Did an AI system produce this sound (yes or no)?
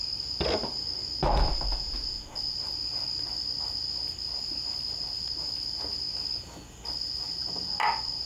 no